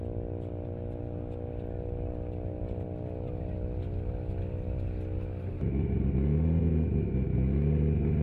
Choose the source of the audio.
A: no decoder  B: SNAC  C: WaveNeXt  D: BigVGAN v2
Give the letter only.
A